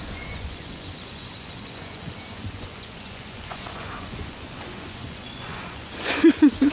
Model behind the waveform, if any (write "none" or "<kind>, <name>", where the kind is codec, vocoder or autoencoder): vocoder, Vocos